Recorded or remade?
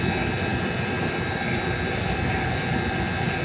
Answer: recorded